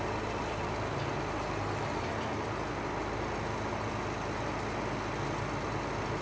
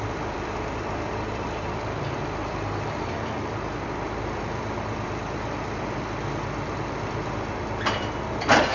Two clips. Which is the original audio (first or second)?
first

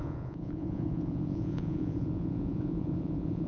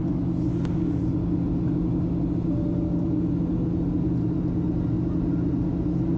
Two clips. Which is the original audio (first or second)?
second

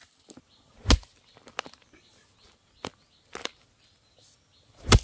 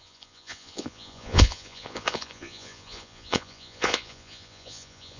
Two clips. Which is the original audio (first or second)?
first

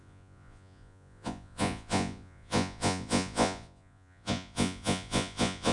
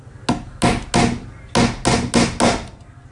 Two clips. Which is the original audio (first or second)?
second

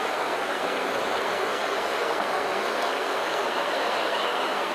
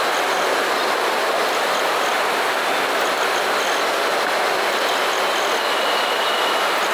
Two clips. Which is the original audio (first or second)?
second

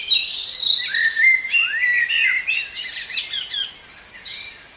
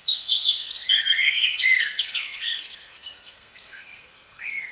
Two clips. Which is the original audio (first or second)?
first